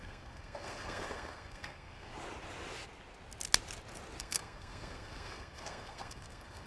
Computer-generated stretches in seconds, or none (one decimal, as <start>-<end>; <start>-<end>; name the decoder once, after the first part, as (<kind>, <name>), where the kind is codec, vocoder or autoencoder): 0.0-2.1 (codec, SNAC); 4.2-6.7